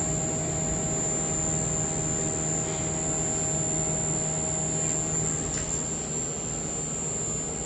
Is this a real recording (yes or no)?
yes